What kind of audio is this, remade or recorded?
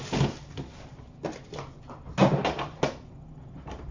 recorded